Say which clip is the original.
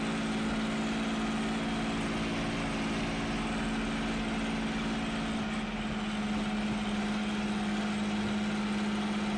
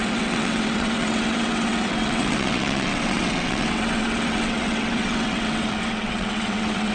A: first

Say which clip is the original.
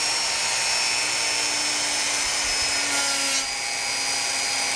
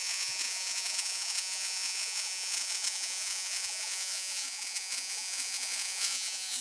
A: first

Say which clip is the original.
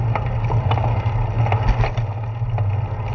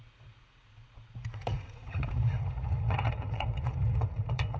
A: first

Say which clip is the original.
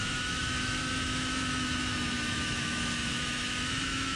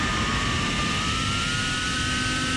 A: second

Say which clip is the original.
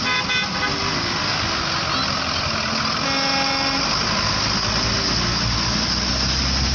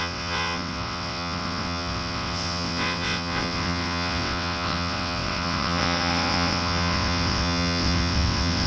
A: first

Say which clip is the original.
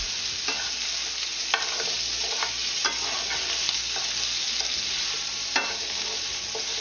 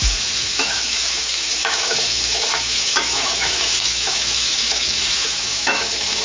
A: first